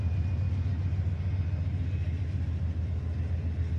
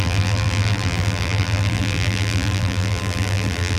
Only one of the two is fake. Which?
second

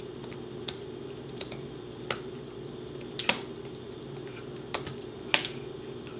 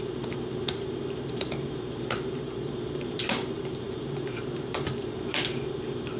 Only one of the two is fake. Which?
second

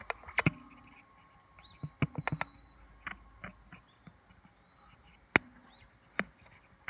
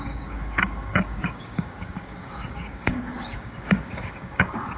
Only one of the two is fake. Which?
second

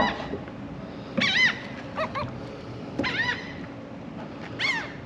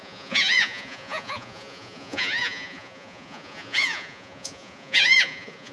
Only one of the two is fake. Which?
second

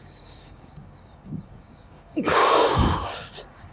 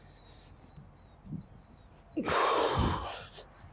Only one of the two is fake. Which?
first